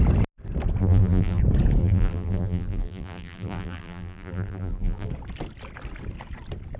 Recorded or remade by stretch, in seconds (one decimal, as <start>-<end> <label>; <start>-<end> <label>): 0.0-0.8 recorded; 0.8-1.4 remade; 1.4-1.8 recorded; 1.8-5.1 remade; 5.1-6.8 recorded